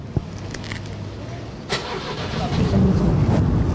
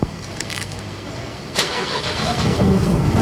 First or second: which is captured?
first